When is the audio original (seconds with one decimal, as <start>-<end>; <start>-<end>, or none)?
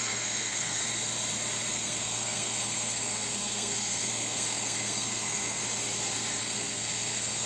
0.8-1.7; 5.6-6.4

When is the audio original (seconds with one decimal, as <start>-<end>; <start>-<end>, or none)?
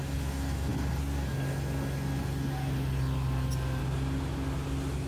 0.0-5.1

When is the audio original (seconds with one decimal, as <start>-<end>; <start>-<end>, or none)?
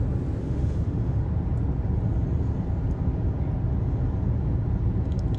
0.0-0.4; 1.2-5.4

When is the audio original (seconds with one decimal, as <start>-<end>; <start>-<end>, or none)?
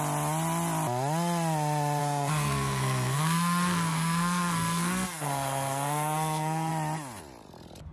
0.0-2.0; 6.7-7.9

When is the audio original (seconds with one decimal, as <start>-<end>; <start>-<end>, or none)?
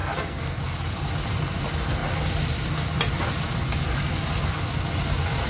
0.6-5.5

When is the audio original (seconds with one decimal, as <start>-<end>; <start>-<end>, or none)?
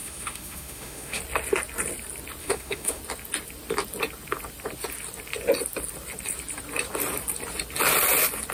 1.2-2.4; 3.0-8.5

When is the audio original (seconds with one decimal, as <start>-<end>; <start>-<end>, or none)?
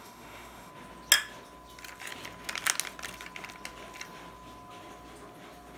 0.7-5.8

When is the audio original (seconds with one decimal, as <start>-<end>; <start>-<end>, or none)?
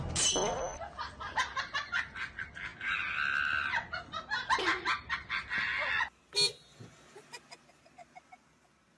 0.0-9.0